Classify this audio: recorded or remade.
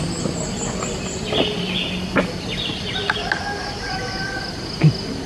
recorded